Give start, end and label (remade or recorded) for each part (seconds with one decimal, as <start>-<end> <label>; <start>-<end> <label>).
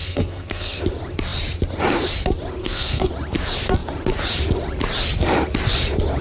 0.0-0.8 remade; 0.8-2.6 recorded; 2.6-3.1 remade; 3.1-6.2 recorded